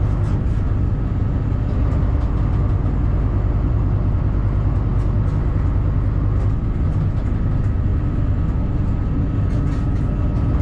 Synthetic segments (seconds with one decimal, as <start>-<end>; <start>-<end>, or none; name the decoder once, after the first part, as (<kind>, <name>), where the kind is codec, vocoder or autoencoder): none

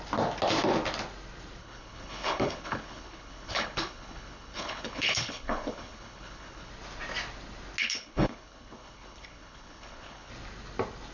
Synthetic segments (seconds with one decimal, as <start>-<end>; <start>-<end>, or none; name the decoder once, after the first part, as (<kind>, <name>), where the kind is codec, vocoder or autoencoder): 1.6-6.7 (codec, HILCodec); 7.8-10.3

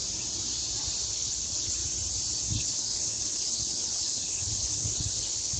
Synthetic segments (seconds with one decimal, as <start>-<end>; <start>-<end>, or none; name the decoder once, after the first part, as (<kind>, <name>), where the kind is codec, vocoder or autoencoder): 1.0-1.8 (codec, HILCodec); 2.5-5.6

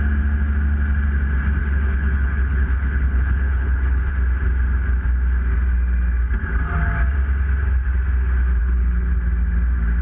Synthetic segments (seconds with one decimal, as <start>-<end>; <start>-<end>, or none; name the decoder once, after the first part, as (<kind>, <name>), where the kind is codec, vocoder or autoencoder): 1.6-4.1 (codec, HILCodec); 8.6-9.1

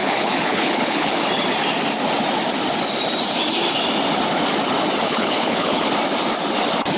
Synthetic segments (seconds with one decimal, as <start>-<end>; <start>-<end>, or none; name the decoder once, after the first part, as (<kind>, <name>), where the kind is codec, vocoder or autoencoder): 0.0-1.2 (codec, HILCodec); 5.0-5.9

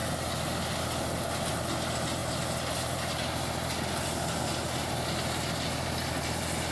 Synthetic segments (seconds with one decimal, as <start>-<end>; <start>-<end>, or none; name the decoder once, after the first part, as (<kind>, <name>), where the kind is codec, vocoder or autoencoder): none